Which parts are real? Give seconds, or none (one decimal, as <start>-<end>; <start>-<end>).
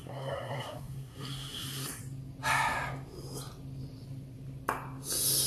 2.0-5.5